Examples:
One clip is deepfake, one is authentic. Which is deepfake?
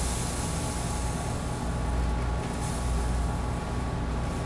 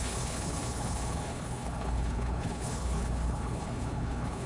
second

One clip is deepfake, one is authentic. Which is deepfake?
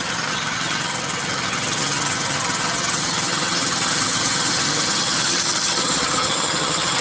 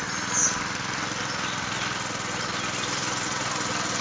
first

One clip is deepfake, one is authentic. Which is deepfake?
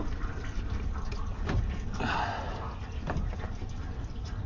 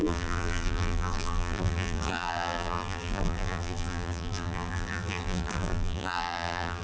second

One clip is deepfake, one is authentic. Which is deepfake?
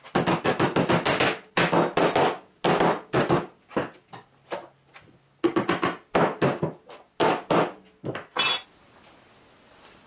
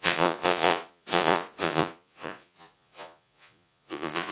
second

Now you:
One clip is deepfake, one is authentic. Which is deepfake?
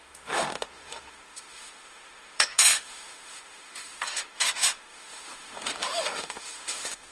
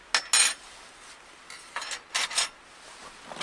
first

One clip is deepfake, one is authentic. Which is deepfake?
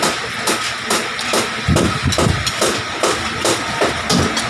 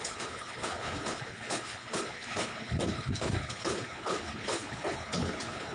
second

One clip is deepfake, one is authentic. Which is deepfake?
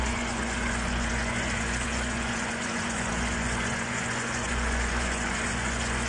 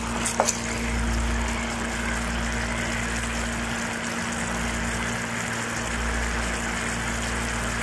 first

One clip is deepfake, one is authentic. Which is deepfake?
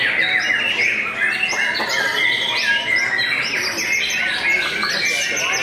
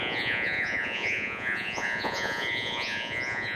second